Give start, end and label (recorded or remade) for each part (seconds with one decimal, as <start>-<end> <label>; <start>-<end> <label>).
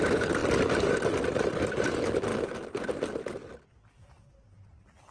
0.0-5.1 recorded